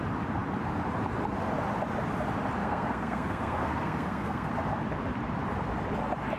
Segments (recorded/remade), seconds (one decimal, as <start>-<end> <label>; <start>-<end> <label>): 0.0-2.6 recorded; 2.6-4.5 remade; 4.5-6.4 recorded